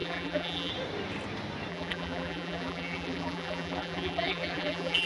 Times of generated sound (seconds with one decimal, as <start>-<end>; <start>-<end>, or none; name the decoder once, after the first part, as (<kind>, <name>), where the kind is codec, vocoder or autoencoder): 0.0-0.7 (vocoder, BigVGAN v2); 1.7-5.1